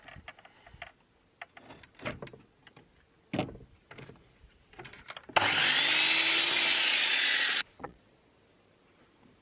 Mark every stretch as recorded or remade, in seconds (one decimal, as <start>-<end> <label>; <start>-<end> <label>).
0.0-6.7 recorded; 6.7-8.4 remade; 8.4-9.4 recorded